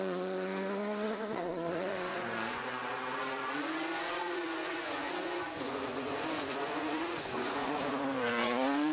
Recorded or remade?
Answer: remade